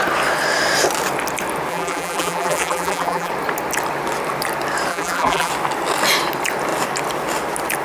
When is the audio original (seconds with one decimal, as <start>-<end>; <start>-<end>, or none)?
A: 0.0-1.7; 3.3-4.9; 5.5-7.8